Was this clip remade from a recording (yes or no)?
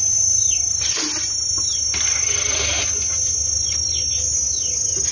no